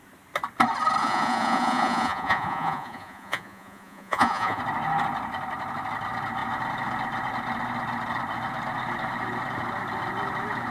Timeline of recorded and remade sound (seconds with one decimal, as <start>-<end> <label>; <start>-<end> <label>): 0.0-1.0 recorded; 1.0-4.6 remade; 4.6-10.7 recorded